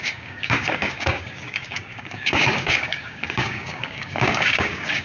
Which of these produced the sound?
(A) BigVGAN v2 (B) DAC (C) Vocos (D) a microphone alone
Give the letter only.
B